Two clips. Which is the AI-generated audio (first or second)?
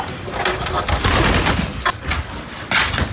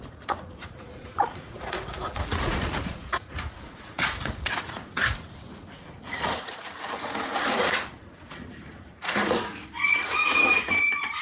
second